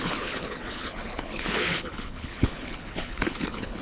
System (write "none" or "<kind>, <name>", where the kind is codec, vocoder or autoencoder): codec, HILCodec